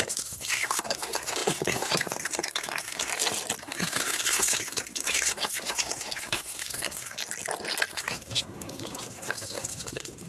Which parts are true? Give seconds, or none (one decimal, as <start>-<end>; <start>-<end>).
3.1-3.6; 7.2-7.9